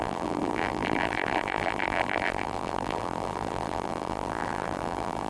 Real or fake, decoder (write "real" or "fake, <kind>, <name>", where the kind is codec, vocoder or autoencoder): fake, vocoder, BigVGAN v2